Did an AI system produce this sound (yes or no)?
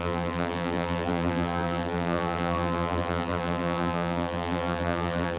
yes